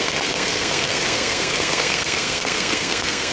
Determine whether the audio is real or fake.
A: fake